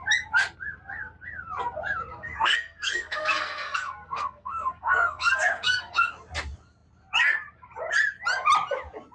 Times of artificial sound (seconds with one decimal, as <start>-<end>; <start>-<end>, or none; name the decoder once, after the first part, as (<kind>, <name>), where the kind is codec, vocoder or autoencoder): 2.1-6.1 (codec, SNAC)

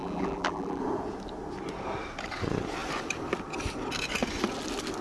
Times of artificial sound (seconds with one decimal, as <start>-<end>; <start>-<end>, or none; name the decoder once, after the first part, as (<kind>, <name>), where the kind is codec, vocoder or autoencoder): 0.0-0.8 (vocoder, BigVGAN v2)